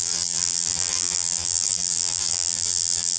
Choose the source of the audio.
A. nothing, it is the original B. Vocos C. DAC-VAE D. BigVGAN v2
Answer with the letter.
D